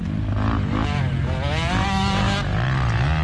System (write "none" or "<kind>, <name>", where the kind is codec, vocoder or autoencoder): none